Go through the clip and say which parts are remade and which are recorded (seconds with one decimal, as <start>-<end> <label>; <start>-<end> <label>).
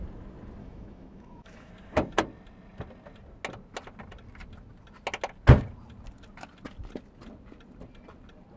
0.0-0.6 recorded; 0.6-1.7 remade; 1.7-8.6 recorded